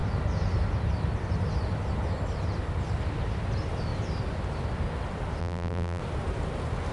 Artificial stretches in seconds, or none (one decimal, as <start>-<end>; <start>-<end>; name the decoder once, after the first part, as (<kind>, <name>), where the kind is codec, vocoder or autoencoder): 5.4-6.0 (vocoder, BigVGAN v2)